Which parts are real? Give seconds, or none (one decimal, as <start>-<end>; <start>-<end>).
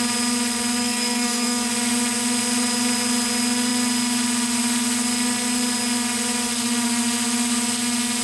0.0-0.8; 1.7-8.2